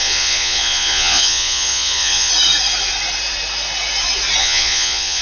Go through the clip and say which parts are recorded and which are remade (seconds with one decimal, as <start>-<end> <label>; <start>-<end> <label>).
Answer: 0.0-2.3 remade; 2.3-4.4 recorded; 4.4-5.2 remade